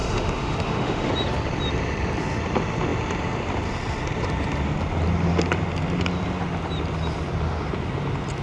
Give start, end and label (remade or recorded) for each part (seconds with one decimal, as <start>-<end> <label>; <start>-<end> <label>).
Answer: 0.0-1.1 remade; 1.1-8.4 recorded